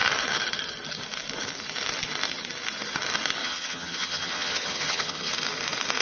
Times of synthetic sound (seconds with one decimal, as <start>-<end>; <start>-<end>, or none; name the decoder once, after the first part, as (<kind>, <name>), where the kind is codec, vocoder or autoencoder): 3.4-5.3 (vocoder, HiFi-GAN)